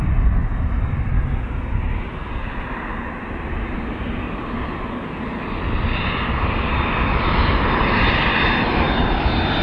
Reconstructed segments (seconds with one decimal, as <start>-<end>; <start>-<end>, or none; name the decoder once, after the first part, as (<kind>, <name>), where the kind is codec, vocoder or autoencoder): none